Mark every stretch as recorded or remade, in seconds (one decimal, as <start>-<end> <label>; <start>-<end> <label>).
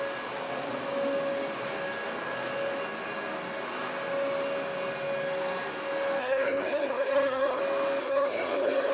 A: 0.0-6.2 recorded; 6.2-7.6 remade; 7.6-8.0 recorded; 8.0-8.9 remade